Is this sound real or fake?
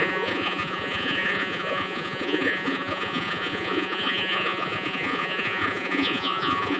fake